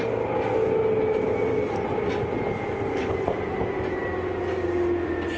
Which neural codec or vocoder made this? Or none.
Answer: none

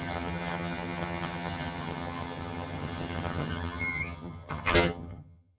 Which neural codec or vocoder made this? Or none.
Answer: vocoder, HiFi-GAN